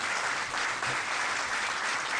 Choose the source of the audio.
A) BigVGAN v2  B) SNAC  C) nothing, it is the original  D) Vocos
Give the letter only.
C